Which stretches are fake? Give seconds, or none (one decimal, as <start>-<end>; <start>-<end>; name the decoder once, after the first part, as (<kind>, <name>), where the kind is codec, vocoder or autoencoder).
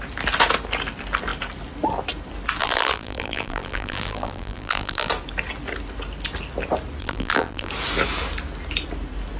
2.6-5.1 (vocoder, BigVGAN v2); 7.0-7.7